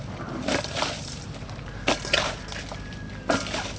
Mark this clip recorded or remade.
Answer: recorded